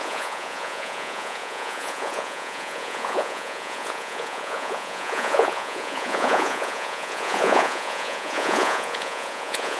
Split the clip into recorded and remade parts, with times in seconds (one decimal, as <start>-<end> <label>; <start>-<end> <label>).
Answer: 0.0-9.8 remade